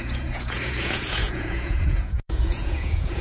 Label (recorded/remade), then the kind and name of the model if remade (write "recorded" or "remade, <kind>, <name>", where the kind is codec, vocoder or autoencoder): remade, vocoder, Vocos